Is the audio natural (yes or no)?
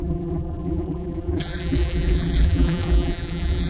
no